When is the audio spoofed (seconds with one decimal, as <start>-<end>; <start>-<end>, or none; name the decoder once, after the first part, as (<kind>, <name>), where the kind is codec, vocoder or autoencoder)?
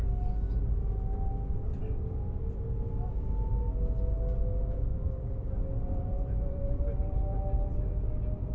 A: 4.9-5.5 (vocoder, BigVGAN v2); 5.9-8.1